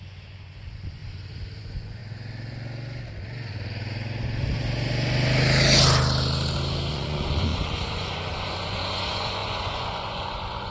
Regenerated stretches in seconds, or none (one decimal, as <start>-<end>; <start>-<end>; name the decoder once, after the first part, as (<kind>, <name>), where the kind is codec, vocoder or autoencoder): 0.0-1.0 (vocoder, Vocos); 1.6-2.0; 6.9-10.7